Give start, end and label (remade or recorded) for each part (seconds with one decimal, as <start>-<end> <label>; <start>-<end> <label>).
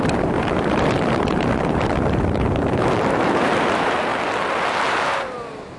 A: 0.0-4.1 remade; 4.1-5.1 recorded; 5.1-5.8 remade